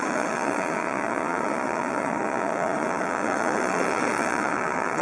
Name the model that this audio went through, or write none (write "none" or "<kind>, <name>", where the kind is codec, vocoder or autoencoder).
vocoder, Vocos